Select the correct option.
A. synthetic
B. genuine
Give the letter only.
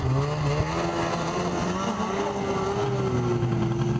B